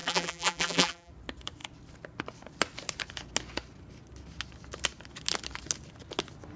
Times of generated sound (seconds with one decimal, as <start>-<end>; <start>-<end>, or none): 0.0-1.1